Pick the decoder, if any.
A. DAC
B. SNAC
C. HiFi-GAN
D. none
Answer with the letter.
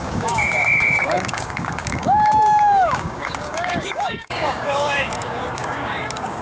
A